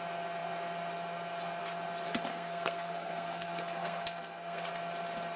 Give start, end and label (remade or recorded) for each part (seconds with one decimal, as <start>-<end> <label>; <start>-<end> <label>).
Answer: 0.0-2.3 recorded; 2.3-4.7 remade; 4.7-5.4 recorded